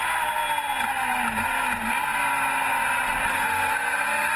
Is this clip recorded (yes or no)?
yes